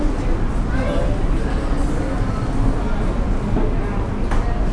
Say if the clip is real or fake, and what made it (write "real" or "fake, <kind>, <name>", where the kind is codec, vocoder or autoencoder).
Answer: real